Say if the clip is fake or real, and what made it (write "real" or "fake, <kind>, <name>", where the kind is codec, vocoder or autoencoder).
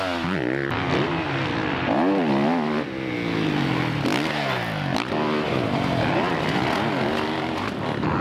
real